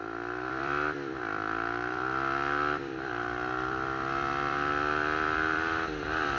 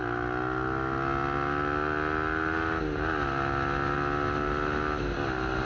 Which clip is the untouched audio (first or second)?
second